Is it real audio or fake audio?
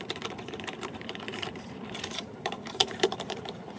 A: fake